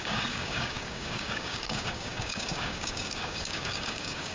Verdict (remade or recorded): remade